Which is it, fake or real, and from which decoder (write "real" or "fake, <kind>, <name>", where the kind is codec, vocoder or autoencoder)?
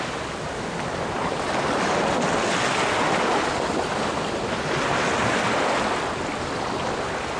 real